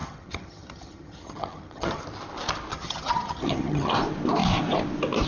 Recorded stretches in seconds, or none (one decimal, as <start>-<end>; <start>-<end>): 2.0-2.7; 3.9-5.3

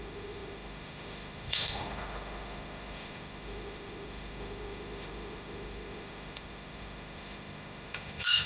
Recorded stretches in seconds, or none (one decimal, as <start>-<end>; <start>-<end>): none

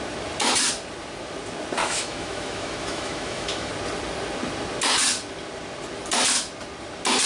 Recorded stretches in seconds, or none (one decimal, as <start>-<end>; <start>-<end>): 0.0-1.8; 3.7-7.3

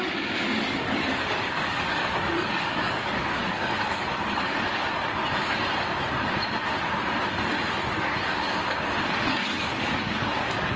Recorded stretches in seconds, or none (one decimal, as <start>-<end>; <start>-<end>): 5.2-8.0